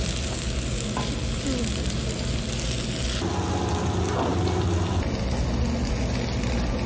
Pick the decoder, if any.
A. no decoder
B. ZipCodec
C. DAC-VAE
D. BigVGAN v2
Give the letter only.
A